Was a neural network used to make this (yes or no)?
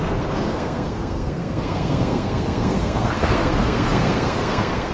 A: yes